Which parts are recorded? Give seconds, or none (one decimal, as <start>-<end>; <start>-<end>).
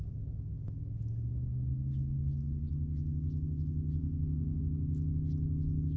0.0-4.0; 4.6-6.0